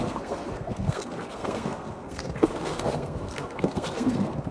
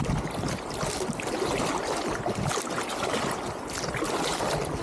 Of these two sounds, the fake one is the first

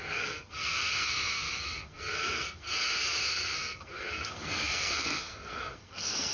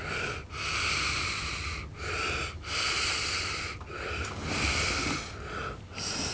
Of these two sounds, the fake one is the first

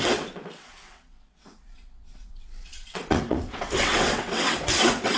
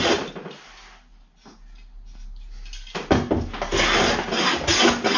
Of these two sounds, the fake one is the first